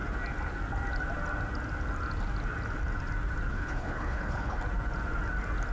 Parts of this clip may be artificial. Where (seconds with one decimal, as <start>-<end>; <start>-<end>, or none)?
3.5-4.6